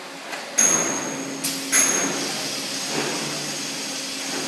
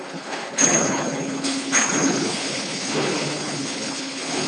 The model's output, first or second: second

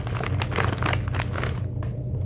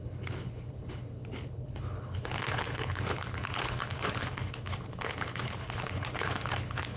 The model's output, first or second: second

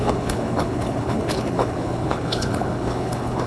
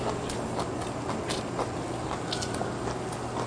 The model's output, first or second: first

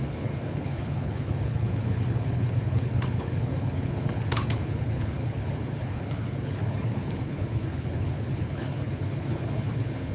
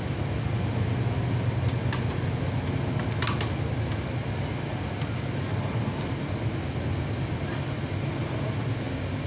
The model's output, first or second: first